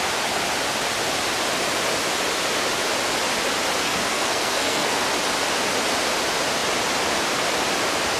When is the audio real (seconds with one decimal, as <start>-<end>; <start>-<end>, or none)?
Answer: 0.0-3.8; 5.0-8.2

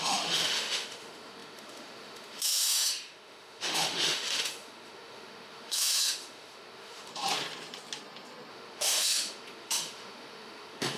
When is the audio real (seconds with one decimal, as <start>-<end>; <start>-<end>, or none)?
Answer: 7.1-8.5

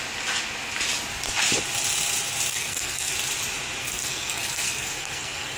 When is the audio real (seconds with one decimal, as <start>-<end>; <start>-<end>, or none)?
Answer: 0.0-2.5; 3.1-3.8

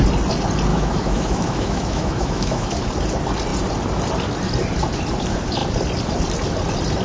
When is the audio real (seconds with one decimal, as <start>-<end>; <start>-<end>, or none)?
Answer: 0.0-0.7; 2.8-7.0